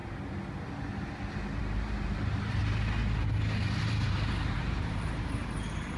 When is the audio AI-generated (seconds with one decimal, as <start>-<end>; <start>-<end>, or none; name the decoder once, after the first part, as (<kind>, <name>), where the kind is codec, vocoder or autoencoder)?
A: 1.6-2.6 (vocoder, BigVGAN v2); 3.8-6.0